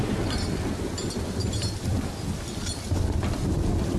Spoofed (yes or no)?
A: yes